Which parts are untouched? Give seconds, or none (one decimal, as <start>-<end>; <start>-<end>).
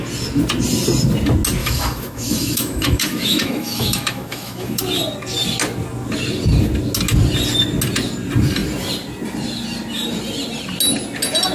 0.0-1.6; 4.8-11.5